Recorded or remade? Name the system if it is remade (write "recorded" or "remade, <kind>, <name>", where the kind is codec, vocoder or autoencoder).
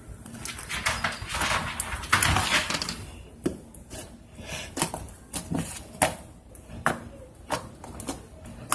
recorded